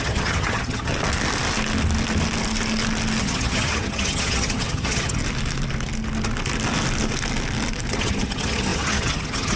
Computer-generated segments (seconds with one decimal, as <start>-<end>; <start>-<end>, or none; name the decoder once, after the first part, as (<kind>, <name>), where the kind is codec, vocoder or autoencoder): 0.0-0.9 (vocoder, HiFi-GAN); 3.2-5.2; 7.9-9.6